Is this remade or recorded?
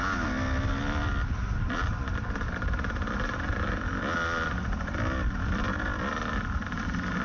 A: recorded